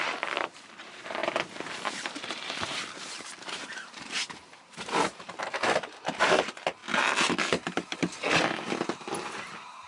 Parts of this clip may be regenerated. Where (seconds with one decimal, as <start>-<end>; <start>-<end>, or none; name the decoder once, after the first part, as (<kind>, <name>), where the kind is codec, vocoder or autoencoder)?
0.0-6.8 (vocoder, BigVGAN v2); 8.3-9.9